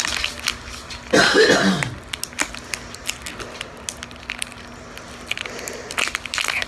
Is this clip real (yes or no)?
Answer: yes